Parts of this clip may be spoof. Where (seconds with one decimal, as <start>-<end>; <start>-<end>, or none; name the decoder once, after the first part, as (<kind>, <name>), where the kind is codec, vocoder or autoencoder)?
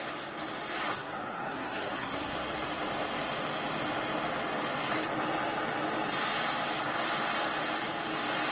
0.9-2.3 (codec, SNAC)